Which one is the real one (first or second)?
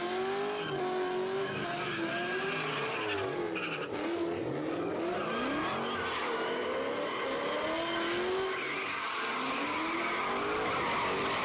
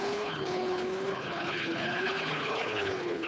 first